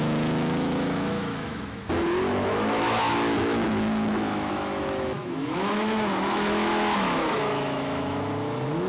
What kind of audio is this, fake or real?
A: fake